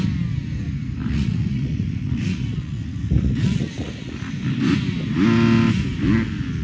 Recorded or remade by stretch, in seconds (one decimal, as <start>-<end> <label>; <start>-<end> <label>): 0.0-1.0 recorded; 1.0-4.3 remade; 4.3-6.6 recorded